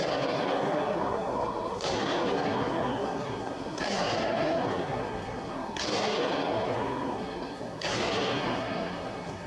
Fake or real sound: fake